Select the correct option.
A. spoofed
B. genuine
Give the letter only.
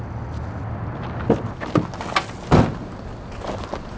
B